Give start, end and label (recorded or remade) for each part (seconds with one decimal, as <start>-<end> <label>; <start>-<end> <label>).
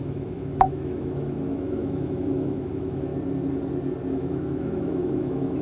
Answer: 0.0-3.1 remade; 3.1-4.1 recorded; 4.1-5.6 remade